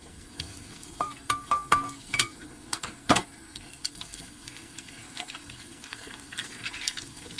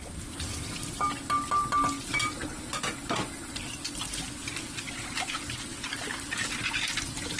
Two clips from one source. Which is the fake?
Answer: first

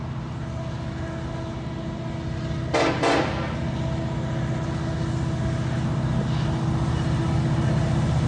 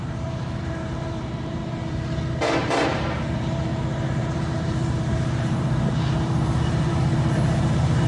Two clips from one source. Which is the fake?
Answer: second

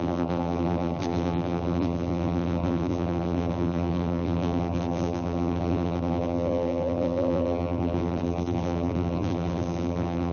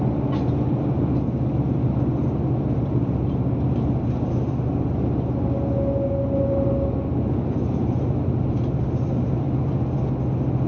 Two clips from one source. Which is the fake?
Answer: first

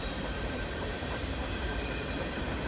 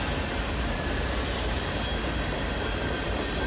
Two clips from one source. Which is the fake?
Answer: first